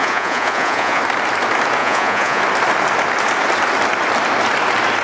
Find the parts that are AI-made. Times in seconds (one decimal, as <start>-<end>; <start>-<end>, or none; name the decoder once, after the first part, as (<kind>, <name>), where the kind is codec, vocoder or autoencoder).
0.0-1.0 (vocoder, Vocos); 1.8-2.4

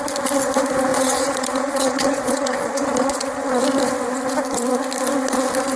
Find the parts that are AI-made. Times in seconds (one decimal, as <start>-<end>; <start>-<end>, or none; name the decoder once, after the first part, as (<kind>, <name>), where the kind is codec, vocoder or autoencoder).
0.9-3.6 (vocoder, Vocos)

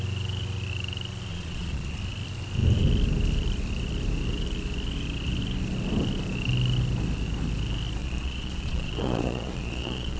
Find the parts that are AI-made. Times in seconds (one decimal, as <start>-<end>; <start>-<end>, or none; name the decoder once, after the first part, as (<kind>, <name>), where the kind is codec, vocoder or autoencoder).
1.3-2.0 (vocoder, Vocos); 8.0-10.2

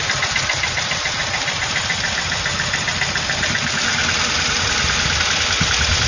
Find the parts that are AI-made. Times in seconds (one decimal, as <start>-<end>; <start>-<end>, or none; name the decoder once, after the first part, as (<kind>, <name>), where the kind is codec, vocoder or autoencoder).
none

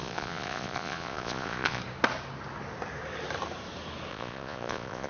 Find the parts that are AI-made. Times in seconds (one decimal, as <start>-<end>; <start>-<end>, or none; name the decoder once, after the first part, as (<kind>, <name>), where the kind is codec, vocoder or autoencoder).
0.0-1.8 (vocoder, Vocos); 4.1-5.1

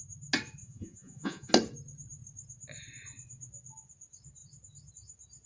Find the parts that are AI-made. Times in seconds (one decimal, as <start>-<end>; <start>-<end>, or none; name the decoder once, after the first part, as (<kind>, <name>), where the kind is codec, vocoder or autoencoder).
0.6-1.5 (vocoder, Vocos)

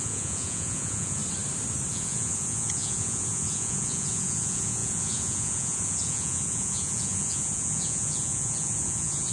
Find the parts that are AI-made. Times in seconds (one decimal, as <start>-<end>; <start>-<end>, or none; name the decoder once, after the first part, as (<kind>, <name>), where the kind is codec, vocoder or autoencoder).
0.0-1.2 (vocoder, Vocos); 1.9-9.3

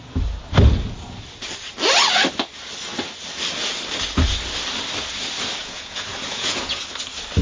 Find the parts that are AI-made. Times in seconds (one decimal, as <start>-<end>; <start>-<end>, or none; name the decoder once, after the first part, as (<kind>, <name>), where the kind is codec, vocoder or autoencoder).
5.6-6.8 (vocoder, Vocos)